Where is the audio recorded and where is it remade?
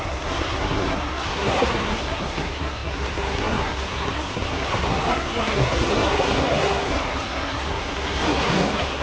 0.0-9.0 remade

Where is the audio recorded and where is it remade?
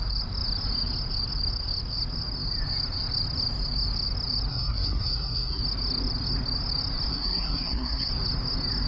0.0-4.5 recorded; 4.5-5.6 remade; 5.6-7.1 recorded; 7.1-8.1 remade; 8.1-8.9 recorded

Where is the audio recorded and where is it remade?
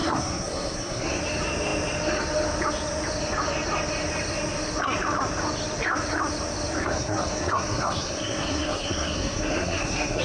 0.0-1.2 remade; 1.2-6.8 recorded; 6.8-10.2 remade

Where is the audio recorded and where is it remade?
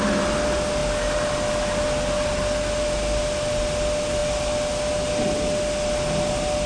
0.0-6.7 recorded